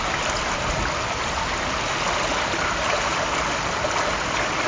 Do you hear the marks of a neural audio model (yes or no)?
no